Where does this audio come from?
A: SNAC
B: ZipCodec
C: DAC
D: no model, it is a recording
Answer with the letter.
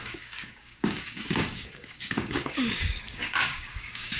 C